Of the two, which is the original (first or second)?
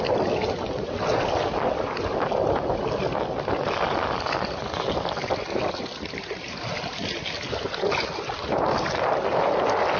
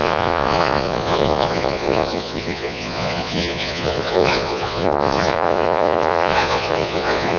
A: first